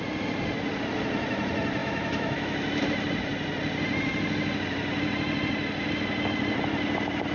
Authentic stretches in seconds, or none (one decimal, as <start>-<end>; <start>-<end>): 0.0-1.8; 2.8-7.3